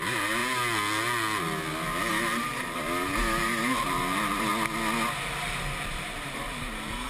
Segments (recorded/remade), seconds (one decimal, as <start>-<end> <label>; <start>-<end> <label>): 0.0-0.4 remade; 0.4-2.1 recorded; 2.1-4.5 remade; 4.5-5.8 recorded; 5.8-7.1 remade